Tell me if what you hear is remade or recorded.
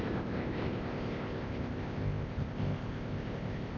remade